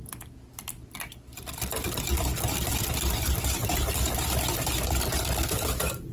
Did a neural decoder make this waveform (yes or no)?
no